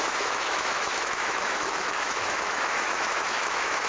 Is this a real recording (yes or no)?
no